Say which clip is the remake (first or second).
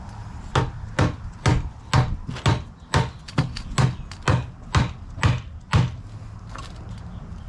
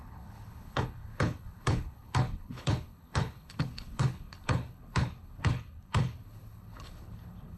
second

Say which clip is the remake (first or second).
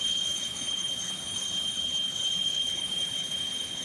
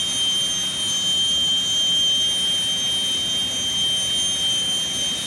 first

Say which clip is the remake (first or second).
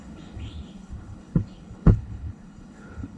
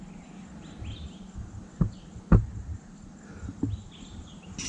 first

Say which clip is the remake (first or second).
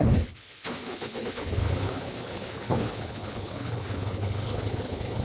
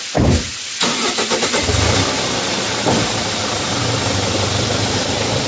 first